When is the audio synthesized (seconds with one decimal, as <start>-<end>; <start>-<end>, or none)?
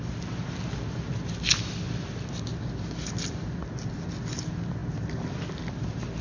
none